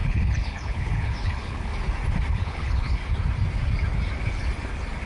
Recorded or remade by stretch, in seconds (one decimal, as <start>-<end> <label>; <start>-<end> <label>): 0.0-1.7 remade; 1.7-2.3 recorded; 2.3-3.0 remade; 3.0-5.1 recorded